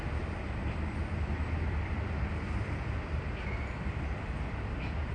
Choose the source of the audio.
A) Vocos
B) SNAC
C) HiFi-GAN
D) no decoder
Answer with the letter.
D